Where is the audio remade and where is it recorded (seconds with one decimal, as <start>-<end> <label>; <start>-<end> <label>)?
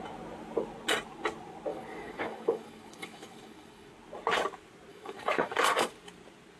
0.0-1.7 recorded; 1.7-3.9 remade; 3.9-4.9 recorded; 4.9-5.9 remade; 5.9-6.6 recorded